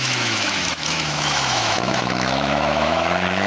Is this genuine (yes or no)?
no